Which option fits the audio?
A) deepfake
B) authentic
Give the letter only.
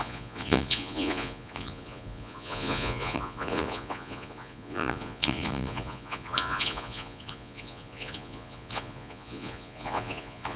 A